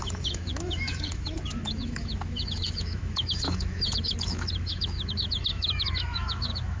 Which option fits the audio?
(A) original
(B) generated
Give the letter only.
B